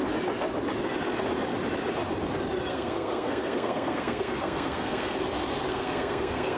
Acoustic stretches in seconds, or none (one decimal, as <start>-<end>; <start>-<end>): 0.0-2.7; 5.2-5.7